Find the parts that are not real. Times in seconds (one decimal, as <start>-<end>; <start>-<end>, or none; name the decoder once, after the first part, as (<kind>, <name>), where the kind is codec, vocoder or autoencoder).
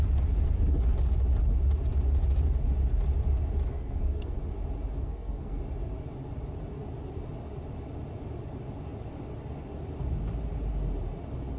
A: 3.7-4.4 (codec, SNAC); 5.0-5.6